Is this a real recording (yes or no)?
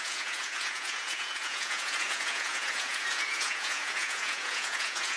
no